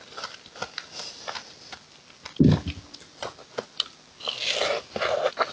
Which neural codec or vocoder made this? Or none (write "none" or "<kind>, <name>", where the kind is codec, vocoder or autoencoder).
none